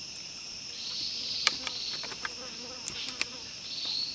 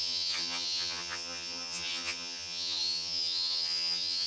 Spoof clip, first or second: second